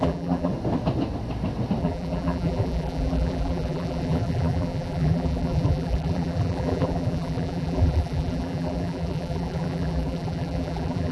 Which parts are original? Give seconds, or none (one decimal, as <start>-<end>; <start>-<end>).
0.5-1.8